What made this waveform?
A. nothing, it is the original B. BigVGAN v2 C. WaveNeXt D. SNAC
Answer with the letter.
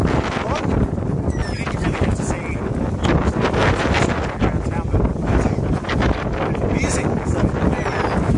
A